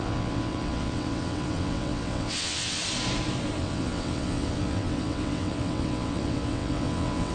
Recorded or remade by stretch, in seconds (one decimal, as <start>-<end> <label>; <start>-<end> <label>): 0.0-2.8 remade; 2.8-3.6 recorded; 3.6-7.3 remade